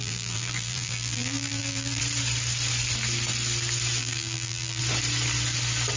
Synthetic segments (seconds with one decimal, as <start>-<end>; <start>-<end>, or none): 0.0-2.0; 4.0-4.8